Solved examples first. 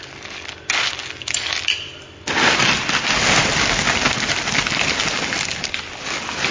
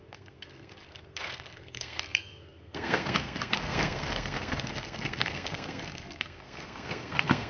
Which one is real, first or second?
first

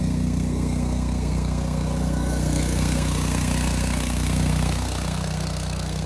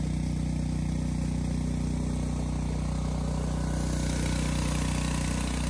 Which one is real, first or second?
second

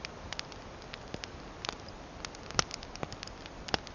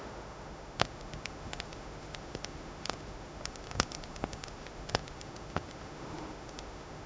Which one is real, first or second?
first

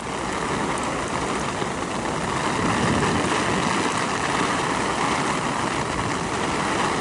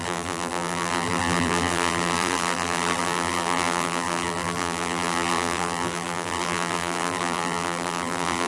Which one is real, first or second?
first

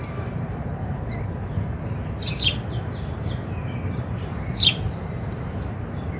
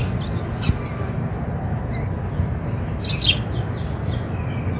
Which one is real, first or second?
second